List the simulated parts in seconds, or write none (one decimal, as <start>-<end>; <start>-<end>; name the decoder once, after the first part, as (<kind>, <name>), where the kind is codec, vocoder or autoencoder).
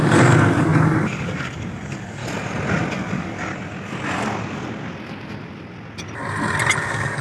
0.0-2.2 (codec, DAC); 2.9-3.5; 6.8-7.2